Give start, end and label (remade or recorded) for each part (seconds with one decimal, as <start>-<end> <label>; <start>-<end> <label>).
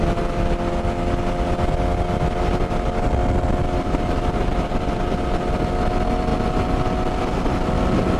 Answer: 0.0-3.6 recorded; 3.6-5.0 remade; 5.0-8.2 recorded